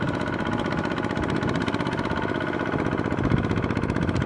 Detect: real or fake real